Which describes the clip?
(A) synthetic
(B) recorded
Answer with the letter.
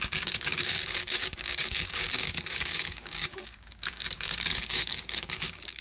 A